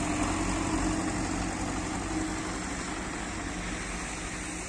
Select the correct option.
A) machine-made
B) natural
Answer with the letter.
B